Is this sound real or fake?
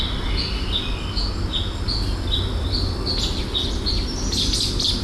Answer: real